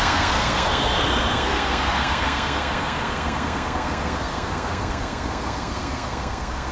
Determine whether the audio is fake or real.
fake